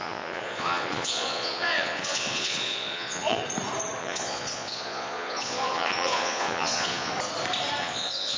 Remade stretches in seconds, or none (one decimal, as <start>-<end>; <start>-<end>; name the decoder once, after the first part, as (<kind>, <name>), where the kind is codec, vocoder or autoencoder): 0.0-3.4 (vocoder, Vocos); 4.0-7.1; 7.8-8.4